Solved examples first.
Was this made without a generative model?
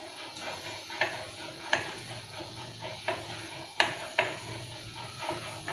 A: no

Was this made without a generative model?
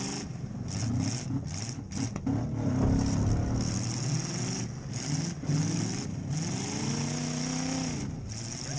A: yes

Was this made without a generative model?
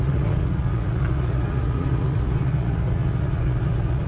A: no